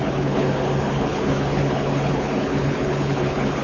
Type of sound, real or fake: fake